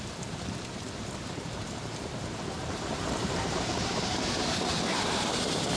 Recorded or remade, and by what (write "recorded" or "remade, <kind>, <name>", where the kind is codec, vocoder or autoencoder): remade, vocoder, BigVGAN v2